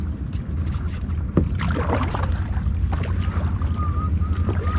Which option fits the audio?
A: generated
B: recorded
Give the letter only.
A